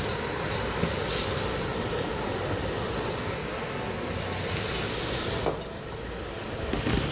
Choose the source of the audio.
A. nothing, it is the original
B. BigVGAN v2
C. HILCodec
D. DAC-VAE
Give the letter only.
A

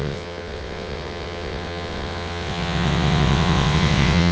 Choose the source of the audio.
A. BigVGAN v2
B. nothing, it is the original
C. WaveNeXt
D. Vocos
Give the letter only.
C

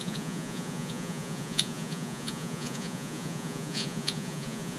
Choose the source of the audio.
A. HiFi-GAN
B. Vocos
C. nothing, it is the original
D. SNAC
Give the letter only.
B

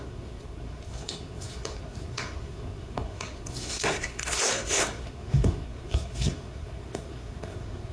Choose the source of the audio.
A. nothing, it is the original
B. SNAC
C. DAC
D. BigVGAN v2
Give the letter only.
B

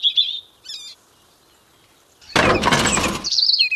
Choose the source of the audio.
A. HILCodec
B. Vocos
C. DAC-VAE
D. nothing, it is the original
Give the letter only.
D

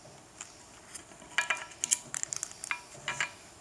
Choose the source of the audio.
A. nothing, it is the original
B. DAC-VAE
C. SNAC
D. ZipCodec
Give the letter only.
A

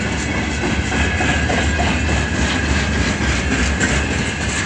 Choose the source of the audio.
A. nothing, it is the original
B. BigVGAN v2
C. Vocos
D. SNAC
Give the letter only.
A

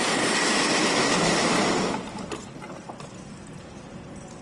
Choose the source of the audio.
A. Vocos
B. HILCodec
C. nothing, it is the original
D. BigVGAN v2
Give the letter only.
C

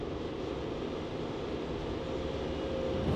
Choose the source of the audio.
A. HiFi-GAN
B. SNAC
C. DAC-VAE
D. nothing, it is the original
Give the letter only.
D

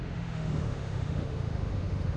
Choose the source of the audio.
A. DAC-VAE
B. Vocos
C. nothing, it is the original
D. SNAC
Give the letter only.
A